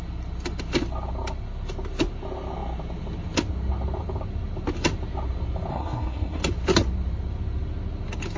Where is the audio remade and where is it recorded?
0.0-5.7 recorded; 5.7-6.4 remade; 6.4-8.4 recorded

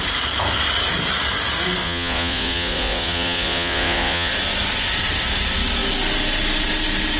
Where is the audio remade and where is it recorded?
0.0-1.8 recorded; 1.8-4.3 remade; 4.3-7.2 recorded

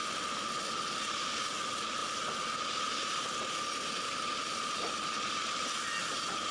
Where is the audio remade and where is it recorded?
0.0-6.5 recorded

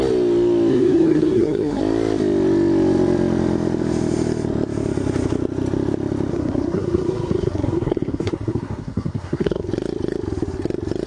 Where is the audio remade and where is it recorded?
0.0-0.7 recorded; 0.7-1.8 remade; 1.8-6.3 recorded; 6.3-9.7 remade; 9.7-11.1 recorded

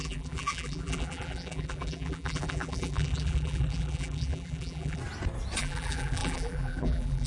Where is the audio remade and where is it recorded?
0.0-5.0 remade; 5.0-5.6 recorded; 5.6-7.3 remade

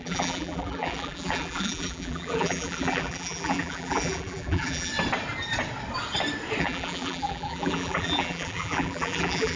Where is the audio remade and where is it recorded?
0.0-4.9 remade; 4.9-6.6 recorded; 6.6-9.6 remade